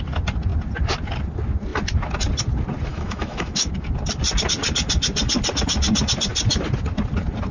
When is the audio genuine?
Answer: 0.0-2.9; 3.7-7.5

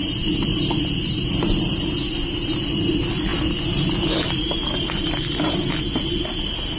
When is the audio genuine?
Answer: 0.0-6.8

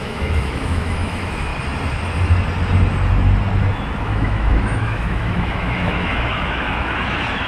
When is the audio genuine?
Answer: 1.5-4.0